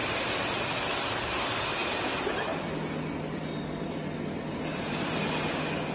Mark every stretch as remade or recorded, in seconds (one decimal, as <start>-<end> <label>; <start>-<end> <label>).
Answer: 0.0-4.5 recorded; 4.5-5.2 remade; 5.2-5.9 recorded